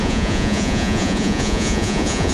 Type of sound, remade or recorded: remade